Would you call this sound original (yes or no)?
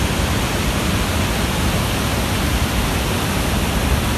yes